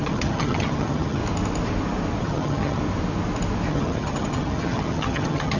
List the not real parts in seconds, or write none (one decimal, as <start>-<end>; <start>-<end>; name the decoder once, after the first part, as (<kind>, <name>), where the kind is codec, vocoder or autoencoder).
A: 0.0-1.2 (vocoder, HiFi-GAN); 2.2-2.8; 3.7-5.6